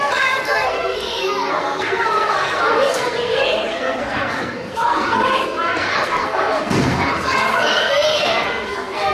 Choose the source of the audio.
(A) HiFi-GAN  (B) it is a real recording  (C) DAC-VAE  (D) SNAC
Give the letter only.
D